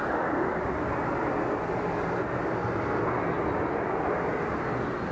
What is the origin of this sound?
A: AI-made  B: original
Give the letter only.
B